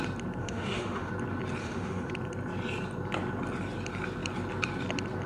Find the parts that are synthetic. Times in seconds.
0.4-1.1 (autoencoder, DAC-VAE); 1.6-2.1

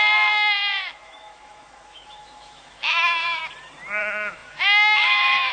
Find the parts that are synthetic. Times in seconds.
0.0-3.4 (autoencoder, DAC-VAE); 4.0-5.5

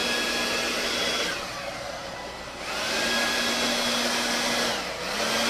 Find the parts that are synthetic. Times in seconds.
none

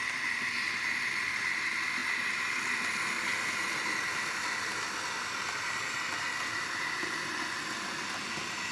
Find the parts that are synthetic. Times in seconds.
none